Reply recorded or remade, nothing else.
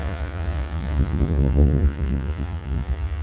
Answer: remade